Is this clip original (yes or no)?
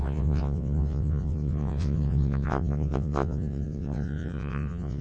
no